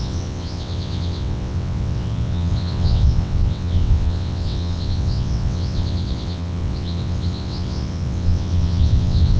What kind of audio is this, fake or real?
fake